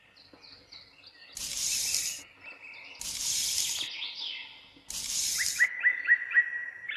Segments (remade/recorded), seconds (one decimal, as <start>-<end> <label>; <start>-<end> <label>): 0.0-7.0 recorded